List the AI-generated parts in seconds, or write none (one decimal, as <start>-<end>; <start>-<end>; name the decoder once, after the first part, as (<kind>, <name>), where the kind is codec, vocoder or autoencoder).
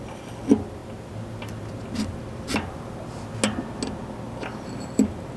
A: none